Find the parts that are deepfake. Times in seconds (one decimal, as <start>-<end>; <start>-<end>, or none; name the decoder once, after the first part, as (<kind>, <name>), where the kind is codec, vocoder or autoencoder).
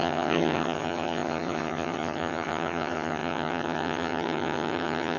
0.0-5.2 (vocoder, HiFi-GAN)